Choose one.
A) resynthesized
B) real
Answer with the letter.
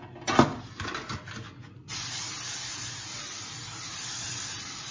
B